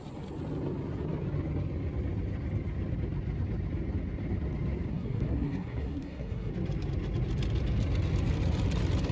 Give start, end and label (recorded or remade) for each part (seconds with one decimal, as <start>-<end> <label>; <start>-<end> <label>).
0.0-4.9 recorded; 4.9-6.5 remade; 6.5-9.1 recorded